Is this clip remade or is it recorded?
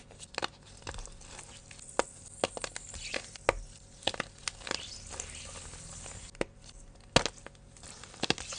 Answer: recorded